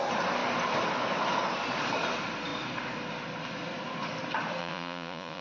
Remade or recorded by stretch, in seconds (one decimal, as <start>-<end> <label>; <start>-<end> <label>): 0.0-4.6 recorded; 4.6-5.4 remade